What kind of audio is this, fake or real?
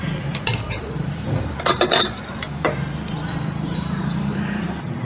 fake